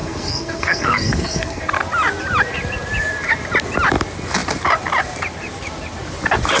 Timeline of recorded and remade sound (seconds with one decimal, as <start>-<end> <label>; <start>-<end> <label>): 0.0-1.6 remade; 1.6-6.6 recorded